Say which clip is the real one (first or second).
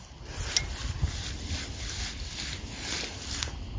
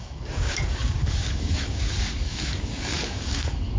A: first